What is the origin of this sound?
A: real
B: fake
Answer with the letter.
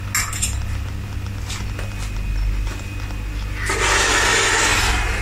A